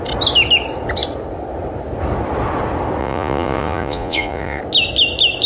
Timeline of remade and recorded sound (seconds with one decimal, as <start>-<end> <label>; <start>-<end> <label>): 0.0-3.0 recorded; 3.0-4.6 remade; 4.6-5.5 recorded